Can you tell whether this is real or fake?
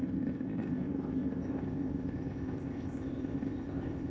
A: fake